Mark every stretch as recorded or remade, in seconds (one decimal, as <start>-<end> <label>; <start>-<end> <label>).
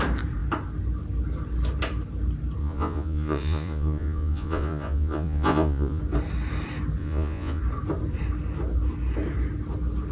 0.0-2.6 recorded; 2.6-6.0 remade; 6.0-7.0 recorded; 7.0-7.6 remade; 7.6-10.1 recorded